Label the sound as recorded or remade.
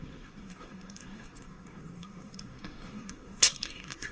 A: remade